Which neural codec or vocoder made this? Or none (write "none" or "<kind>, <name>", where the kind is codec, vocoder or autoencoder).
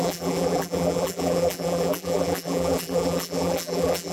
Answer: vocoder, BigVGAN v2